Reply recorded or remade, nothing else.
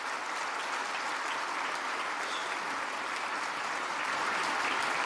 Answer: recorded